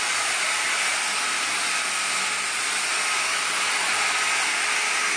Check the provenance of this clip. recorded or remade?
recorded